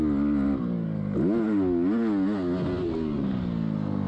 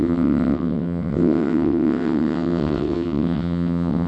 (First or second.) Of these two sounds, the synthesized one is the second